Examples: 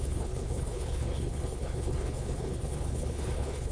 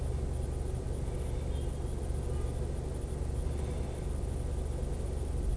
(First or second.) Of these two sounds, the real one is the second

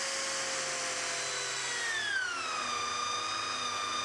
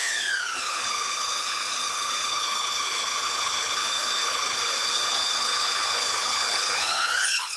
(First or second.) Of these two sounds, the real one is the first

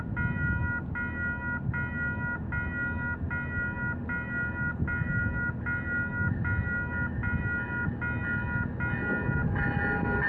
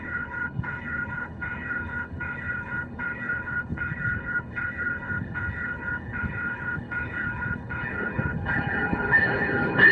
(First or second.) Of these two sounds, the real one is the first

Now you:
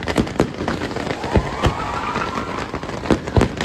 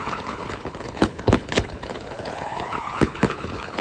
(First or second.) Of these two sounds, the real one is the first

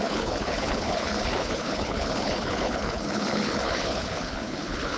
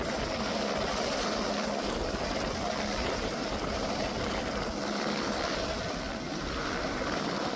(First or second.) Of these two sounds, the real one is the second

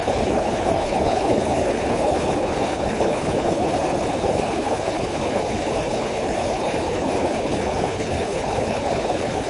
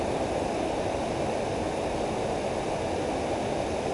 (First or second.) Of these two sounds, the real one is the second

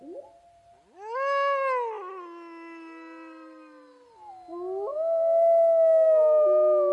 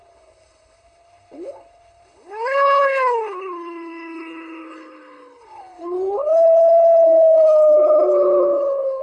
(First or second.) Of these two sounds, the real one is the first